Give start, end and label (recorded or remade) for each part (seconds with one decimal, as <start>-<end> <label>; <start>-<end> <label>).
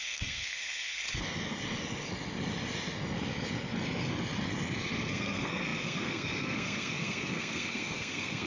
0.0-1.0 remade; 1.0-5.1 recorded; 5.1-8.5 remade